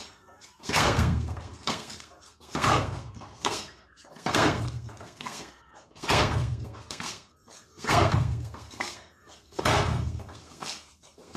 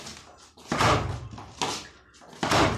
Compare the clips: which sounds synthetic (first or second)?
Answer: first